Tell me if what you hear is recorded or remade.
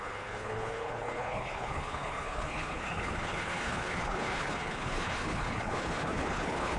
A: remade